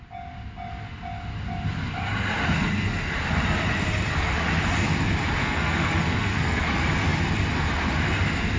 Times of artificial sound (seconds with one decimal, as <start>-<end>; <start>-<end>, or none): 5.4-6.6